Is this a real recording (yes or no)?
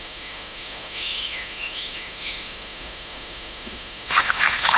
no